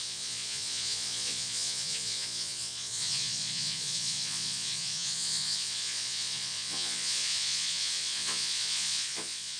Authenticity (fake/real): fake